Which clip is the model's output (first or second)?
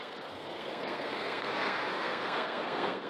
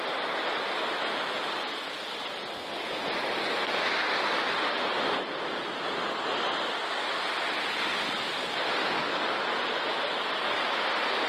first